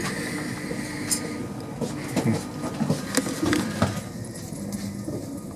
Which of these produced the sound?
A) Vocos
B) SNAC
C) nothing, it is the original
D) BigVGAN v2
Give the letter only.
C